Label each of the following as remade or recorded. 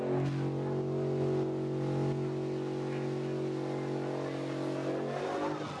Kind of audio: recorded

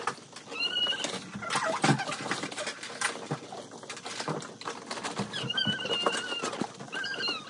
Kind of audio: recorded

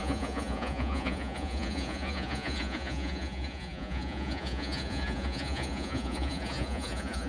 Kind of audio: remade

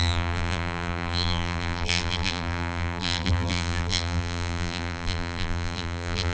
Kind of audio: remade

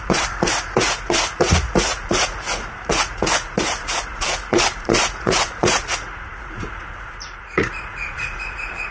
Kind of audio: remade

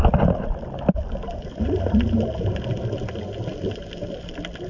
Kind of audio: recorded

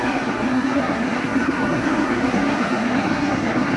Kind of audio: remade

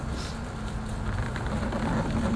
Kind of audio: recorded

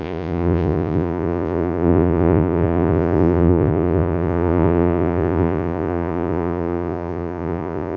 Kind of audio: remade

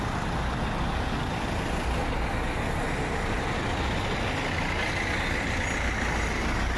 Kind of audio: recorded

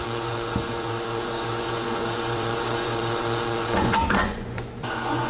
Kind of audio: remade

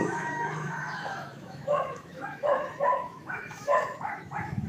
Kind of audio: remade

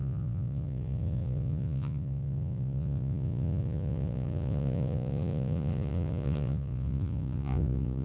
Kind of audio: remade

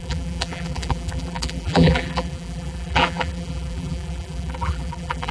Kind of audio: remade